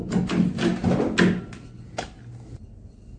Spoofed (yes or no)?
no